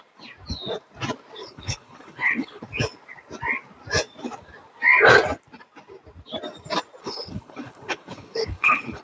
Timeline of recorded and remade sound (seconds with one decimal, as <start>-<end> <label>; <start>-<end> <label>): 0.0-1.4 recorded; 1.4-2.6 remade; 2.6-7.0 recorded; 7.0-9.0 remade